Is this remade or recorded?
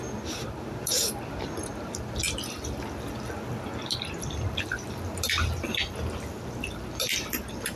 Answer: remade